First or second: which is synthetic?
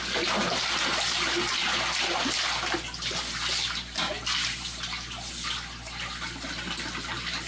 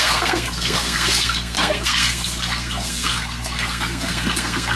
second